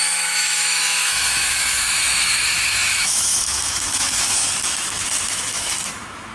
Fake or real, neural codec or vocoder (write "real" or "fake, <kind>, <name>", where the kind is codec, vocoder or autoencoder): fake, autoencoder, DAC-VAE